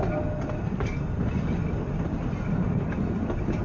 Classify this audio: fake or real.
real